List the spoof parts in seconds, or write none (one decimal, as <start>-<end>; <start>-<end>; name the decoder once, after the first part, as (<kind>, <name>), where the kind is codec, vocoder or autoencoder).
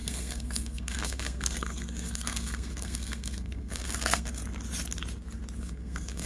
0.0-4.4 (codec, SNAC); 5.6-6.3